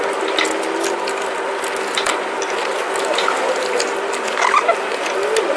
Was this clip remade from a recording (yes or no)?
no